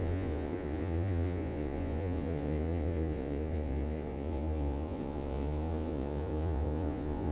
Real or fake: fake